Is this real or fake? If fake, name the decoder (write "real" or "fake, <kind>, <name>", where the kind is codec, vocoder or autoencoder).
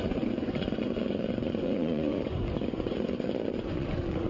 fake, vocoder, Vocos